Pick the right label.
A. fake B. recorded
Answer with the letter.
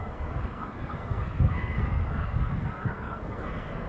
A